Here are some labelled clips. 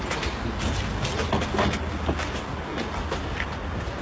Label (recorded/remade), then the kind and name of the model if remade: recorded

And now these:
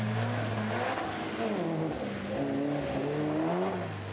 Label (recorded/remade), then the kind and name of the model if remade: recorded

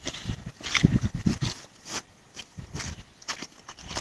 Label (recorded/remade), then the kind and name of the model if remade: recorded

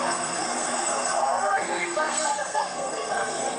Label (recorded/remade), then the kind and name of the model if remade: remade, codec, SNAC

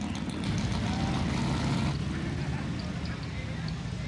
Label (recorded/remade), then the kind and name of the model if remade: recorded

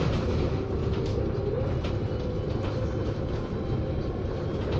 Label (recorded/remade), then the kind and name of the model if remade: recorded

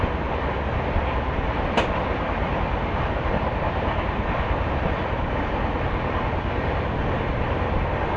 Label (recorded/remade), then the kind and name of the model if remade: recorded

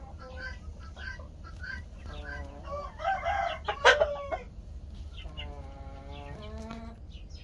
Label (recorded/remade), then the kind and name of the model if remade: recorded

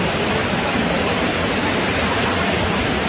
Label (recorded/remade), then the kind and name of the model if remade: recorded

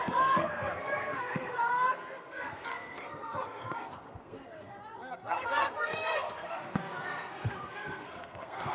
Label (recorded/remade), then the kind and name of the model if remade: remade, codec, SNAC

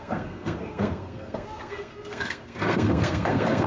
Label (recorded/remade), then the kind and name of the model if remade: remade, codec, SNAC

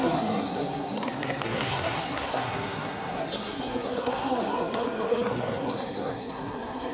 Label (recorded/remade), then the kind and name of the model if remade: remade, codec, SNAC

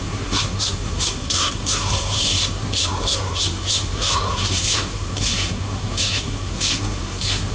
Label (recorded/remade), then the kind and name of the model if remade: remade, codec, SNAC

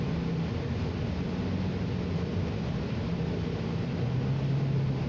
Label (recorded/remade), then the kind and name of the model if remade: recorded